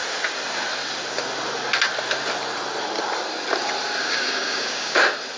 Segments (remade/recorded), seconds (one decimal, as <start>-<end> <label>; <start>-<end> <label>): 0.0-4.0 recorded; 4.0-5.0 remade; 5.0-5.4 recorded